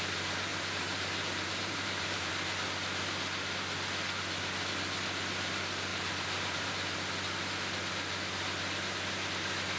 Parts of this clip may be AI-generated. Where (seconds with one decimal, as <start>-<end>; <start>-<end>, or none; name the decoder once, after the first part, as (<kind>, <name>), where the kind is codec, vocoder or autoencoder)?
0.5-2.3 (vocoder, BigVGAN v2); 5.9-6.7